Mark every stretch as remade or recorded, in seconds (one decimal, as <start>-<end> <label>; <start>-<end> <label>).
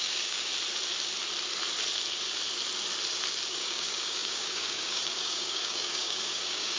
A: 0.0-0.5 remade; 0.5-3.5 recorded; 3.5-6.8 remade